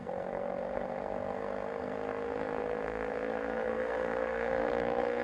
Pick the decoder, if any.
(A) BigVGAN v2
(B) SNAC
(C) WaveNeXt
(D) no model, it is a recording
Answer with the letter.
B